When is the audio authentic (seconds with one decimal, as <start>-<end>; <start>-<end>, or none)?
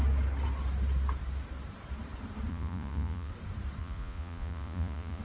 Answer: 0.0-2.5; 3.3-3.8